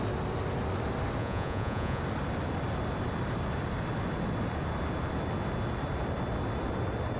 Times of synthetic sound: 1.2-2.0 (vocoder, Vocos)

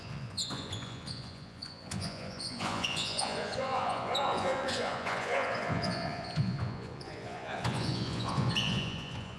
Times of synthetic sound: 0.0-9.4 (vocoder, Vocos)

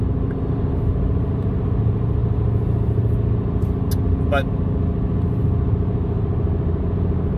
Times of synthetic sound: none

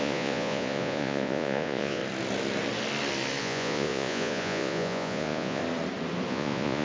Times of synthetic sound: 0.0-2.0 (vocoder, Vocos); 3.4-5.6; 6.3-6.8

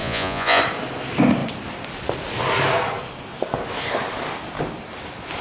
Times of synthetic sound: 0.0-0.6 (vocoder, Vocos)

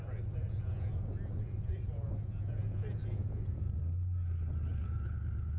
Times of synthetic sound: 0.4-3.8 (vocoder, Vocos); 4.7-5.6